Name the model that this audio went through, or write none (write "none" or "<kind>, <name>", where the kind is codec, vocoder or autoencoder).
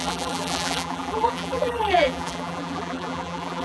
vocoder, BigVGAN v2